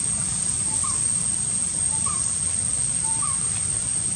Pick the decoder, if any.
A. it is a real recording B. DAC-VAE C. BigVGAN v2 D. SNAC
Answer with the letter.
A